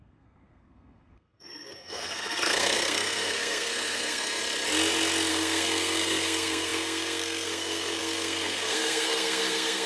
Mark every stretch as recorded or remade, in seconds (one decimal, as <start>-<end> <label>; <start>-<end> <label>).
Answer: 0.0-4.4 remade; 4.4-5.3 recorded; 5.3-9.9 remade

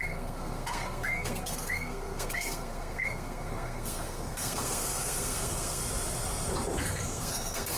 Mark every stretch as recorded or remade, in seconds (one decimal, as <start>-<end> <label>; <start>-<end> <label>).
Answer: 0.0-5.8 remade; 5.8-6.8 recorded; 6.8-7.8 remade

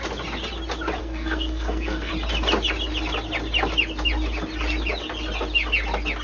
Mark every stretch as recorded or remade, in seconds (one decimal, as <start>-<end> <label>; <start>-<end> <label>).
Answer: 0.0-1.0 recorded; 1.0-2.1 remade; 2.1-6.2 recorded

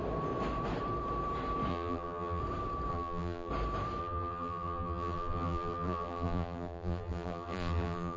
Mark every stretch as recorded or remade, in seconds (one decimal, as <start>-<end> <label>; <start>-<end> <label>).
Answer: 0.0-1.7 recorded; 1.7-2.4 remade; 2.4-2.9 recorded; 2.9-3.5 remade; 3.5-4.0 recorded; 4.0-8.2 remade

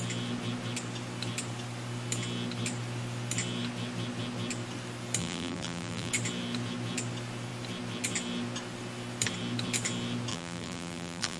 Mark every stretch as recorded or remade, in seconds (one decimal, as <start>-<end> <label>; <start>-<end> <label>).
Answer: 0.0-5.2 recorded; 5.2-6.1 remade; 6.1-10.3 recorded; 10.3-11.4 remade

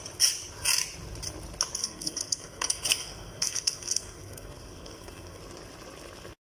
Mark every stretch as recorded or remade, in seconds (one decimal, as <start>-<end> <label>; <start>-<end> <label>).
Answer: 0.0-1.8 recorded; 1.8-5.4 remade; 5.4-6.5 recorded

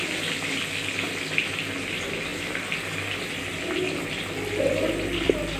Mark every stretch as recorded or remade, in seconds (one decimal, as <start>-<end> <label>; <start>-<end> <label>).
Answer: 0.0-5.6 recorded